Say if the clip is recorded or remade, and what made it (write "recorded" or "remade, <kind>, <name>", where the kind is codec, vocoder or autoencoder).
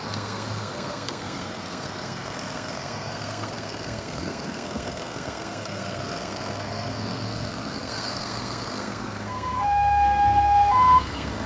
remade, codec, SNAC